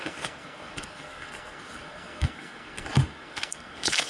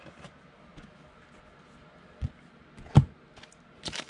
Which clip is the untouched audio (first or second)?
second